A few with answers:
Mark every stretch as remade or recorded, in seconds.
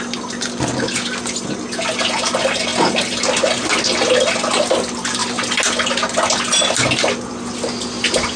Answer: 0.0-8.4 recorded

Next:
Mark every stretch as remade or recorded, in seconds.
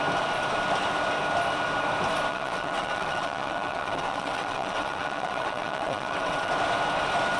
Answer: 0.0-2.3 recorded; 2.3-6.5 remade; 6.5-7.4 recorded